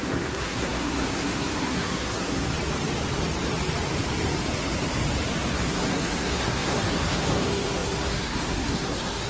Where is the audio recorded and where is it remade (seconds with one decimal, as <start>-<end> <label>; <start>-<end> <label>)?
0.0-2.5 remade; 2.5-5.6 recorded; 5.6-9.3 remade